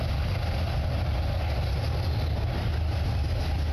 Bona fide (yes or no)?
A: yes